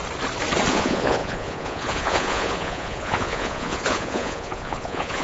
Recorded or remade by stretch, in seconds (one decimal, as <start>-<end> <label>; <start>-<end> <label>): 0.0-0.7 recorded; 0.7-5.2 remade